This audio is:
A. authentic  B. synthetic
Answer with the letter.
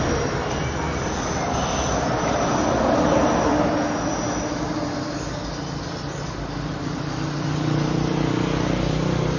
A